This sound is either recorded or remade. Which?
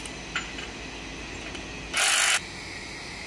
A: recorded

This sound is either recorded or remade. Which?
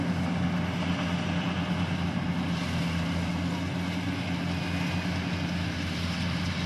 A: recorded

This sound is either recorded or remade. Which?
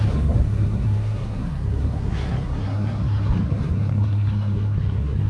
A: remade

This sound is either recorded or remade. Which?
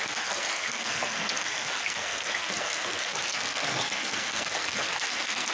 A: remade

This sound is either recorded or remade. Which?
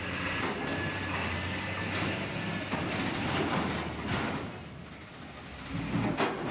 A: recorded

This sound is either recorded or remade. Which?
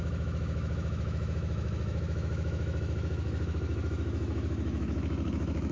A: remade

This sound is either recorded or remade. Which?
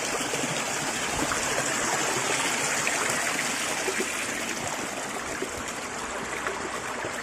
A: recorded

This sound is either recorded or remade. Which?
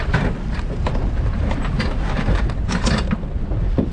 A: recorded